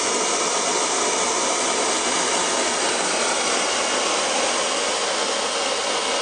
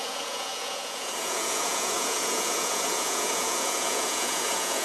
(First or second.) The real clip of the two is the first